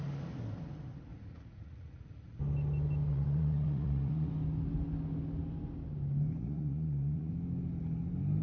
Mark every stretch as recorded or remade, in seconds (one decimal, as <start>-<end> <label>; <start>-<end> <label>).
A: 0.0-1.1 recorded; 1.1-2.4 remade; 2.4-3.1 recorded; 3.1-4.3 remade; 4.3-6.4 recorded; 6.4-7.3 remade; 7.3-8.4 recorded